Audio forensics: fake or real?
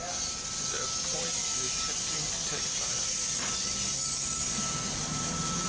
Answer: real